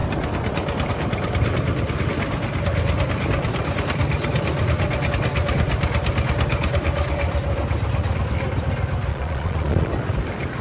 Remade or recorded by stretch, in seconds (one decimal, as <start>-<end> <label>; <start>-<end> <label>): 0.0-9.1 recorded; 9.1-9.9 remade; 9.9-10.6 recorded